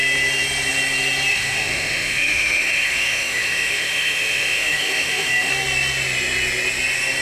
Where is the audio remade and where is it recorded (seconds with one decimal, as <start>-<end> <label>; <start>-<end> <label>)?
0.0-1.3 recorded; 1.3-5.5 remade; 5.5-7.2 recorded